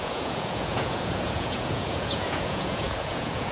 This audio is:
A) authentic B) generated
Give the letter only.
B